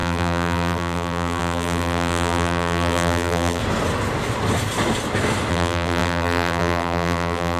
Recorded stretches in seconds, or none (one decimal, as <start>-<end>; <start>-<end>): 3.6-5.5